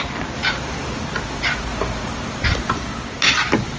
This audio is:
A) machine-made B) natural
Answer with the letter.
B